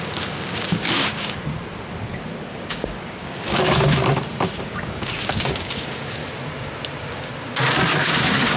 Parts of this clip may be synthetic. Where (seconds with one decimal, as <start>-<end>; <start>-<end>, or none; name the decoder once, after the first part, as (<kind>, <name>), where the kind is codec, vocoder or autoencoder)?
0.0-1.5 (codec, DAC); 2.5-4.0; 4.6-6.2; 7.0-8.6